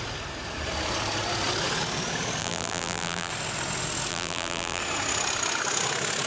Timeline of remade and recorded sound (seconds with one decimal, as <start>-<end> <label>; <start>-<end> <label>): 0.0-2.4 recorded; 2.4-3.3 remade; 3.3-4.1 recorded; 4.1-4.8 remade; 4.8-6.3 recorded